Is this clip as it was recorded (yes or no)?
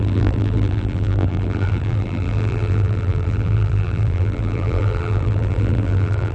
no